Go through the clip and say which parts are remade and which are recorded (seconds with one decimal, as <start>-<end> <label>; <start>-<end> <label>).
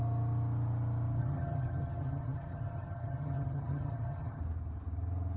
0.0-1.2 recorded; 1.2-4.4 remade; 4.4-5.4 recorded